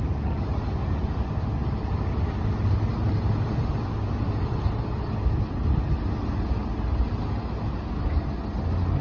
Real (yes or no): yes